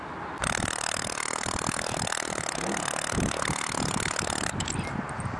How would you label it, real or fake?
real